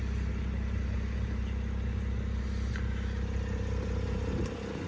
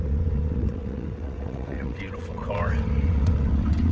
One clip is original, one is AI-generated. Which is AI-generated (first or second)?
second